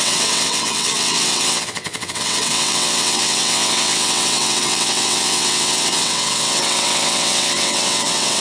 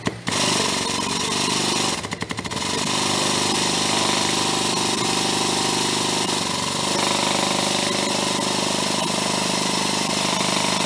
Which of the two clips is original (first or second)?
second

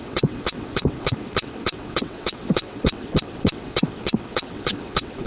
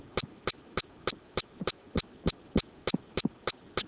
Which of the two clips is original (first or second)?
second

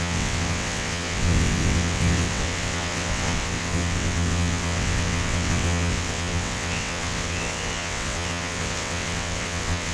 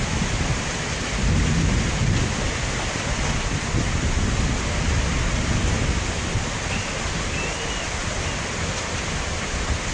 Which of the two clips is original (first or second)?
second